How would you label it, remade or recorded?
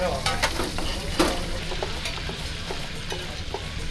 recorded